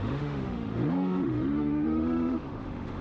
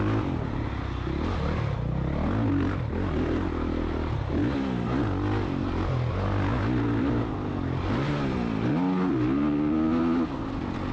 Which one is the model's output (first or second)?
first